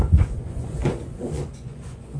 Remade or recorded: remade